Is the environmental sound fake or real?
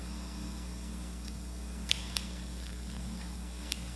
fake